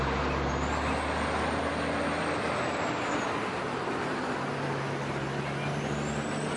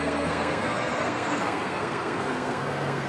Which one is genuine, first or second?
first